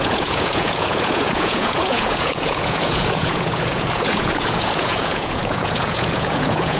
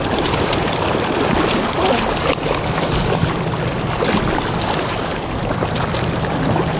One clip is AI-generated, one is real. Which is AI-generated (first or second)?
first